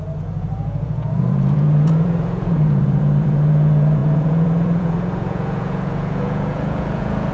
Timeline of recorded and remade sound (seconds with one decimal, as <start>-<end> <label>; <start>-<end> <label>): 0.0-7.3 remade